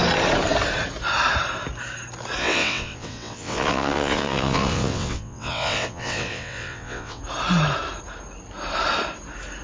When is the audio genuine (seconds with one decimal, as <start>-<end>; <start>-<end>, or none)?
0.0-2.4; 7.2-9.6